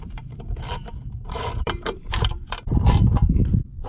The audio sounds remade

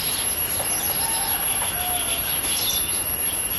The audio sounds recorded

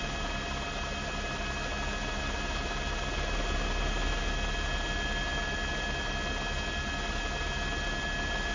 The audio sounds recorded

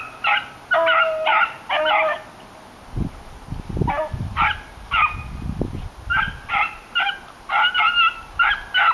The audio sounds recorded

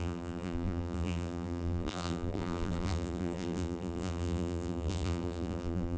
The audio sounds remade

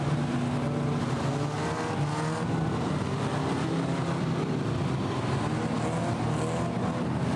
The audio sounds recorded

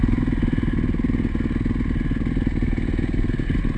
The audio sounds recorded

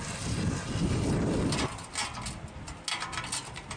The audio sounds recorded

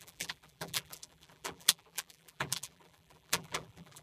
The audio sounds remade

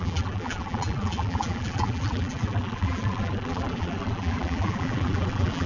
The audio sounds remade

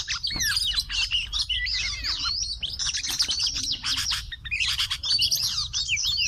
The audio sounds remade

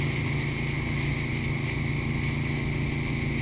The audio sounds recorded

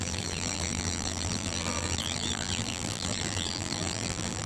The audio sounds remade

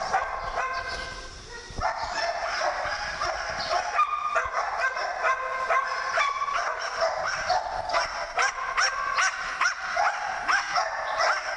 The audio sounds recorded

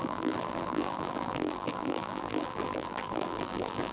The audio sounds remade